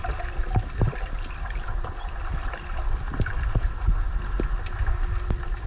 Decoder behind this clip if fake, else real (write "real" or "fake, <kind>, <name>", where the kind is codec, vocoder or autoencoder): real